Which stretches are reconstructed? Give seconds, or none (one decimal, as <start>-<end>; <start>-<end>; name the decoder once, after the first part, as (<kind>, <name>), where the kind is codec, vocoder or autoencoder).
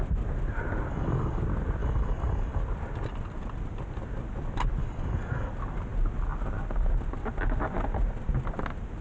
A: 0.9-1.4 (codec, DAC); 1.8-2.6; 4.8-5.5